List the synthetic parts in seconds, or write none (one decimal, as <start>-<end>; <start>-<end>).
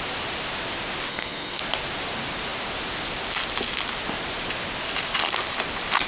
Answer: 1.1-1.6